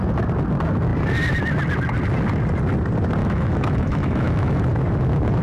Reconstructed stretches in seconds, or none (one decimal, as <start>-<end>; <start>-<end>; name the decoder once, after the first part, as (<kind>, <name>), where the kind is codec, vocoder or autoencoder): 3.2-4.6 (autoencoder, DAC-VAE)